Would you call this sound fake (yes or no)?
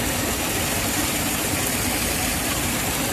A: no